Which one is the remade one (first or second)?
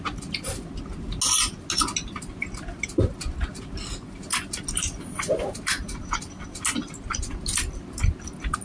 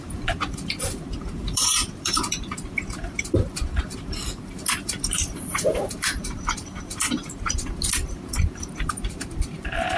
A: second